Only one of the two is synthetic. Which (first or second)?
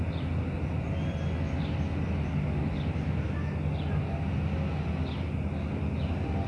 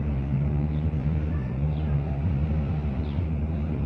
second